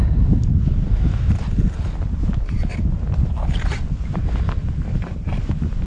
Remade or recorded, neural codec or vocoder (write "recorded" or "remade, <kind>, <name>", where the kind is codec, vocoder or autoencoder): recorded